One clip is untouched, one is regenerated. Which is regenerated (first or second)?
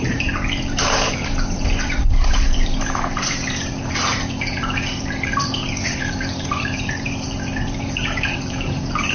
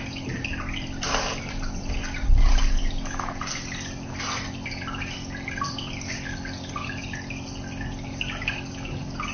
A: first